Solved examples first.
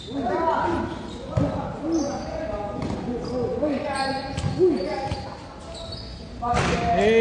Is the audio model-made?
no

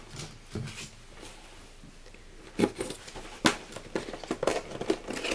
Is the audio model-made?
no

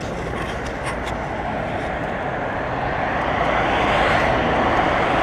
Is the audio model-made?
no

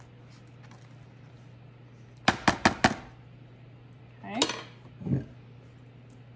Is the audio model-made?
no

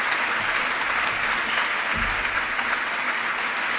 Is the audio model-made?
no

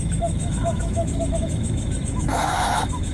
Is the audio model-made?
yes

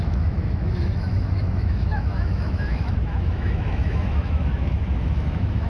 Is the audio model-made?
yes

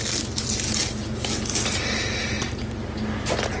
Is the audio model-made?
no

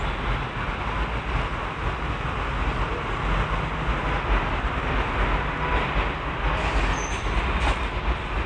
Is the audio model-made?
no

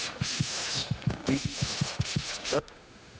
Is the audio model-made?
yes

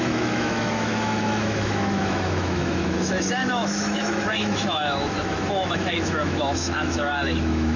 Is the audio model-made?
yes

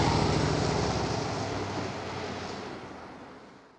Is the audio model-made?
no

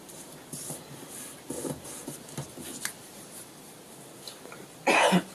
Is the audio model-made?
no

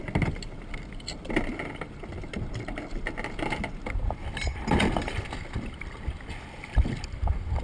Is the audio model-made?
no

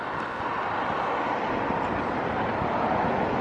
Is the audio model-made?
no